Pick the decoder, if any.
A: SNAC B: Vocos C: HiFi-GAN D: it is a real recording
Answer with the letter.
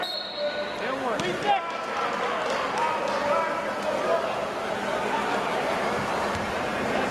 D